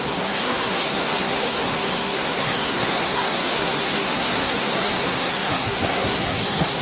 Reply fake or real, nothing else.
fake